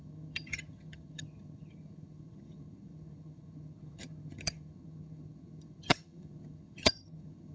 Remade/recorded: remade